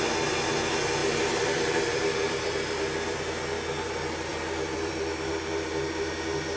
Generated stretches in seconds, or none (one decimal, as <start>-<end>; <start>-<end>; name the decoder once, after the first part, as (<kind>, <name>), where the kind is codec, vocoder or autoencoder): 1.0-3.2 (vocoder, BigVGAN v2); 4.3-5.3